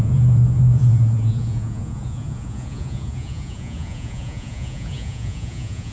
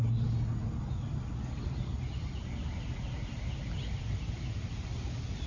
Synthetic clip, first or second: first